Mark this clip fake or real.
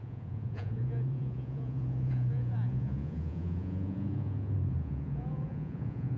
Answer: fake